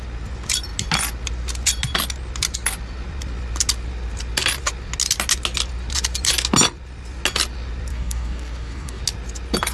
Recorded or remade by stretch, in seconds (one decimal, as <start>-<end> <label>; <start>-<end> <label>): 0.0-7.9 recorded; 7.9-9.0 remade; 9.0-9.7 recorded